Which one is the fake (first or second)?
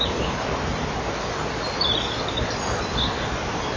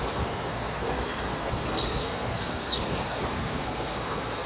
second